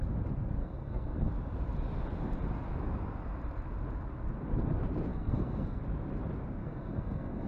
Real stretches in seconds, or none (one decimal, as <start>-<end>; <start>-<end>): 0.0-0.6; 1.3-5.1; 5.8-6.6

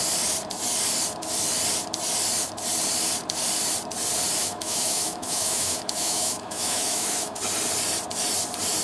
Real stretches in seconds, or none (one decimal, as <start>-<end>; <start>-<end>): 0.0-4.4; 7.4-8.8

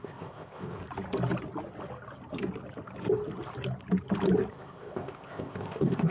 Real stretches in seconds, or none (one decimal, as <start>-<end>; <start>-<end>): 0.8-4.5